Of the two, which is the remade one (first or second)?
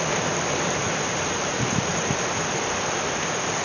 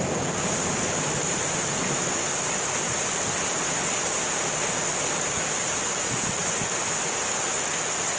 first